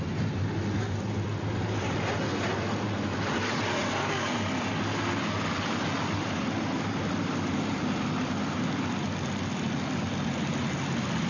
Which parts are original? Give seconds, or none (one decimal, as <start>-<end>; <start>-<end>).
0.0-11.3